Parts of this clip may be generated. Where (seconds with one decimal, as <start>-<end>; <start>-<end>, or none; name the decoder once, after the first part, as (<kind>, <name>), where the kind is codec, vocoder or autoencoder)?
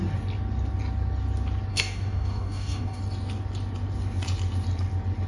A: 1.7-3.0 (codec, DAC)